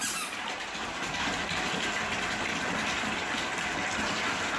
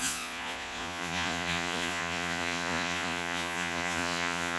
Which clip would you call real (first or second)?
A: first